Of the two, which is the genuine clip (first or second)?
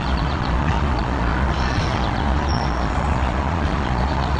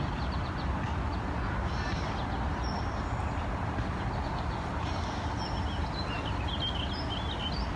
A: second